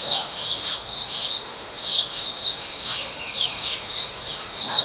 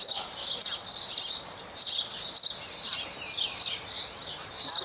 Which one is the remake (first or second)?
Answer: first